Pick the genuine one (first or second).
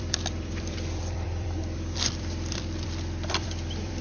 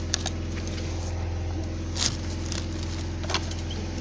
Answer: second